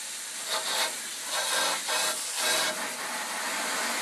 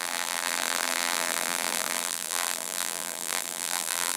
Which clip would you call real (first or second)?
first